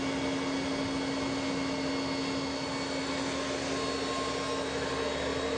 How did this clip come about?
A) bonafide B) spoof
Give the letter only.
A